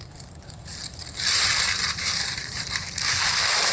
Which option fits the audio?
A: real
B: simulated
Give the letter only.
B